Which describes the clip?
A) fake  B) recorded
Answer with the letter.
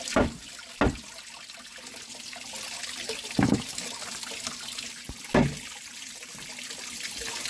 B